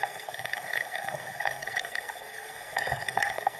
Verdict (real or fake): fake